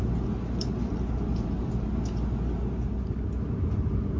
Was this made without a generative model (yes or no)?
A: yes